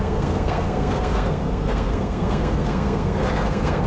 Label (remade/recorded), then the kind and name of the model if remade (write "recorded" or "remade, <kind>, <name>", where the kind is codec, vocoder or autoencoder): remade, codec, SNAC